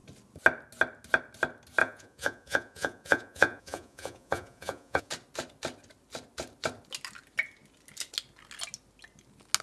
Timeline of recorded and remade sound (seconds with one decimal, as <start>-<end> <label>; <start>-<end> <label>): 0.0-1.8 recorded; 1.8-5.1 remade; 5.1-9.6 recorded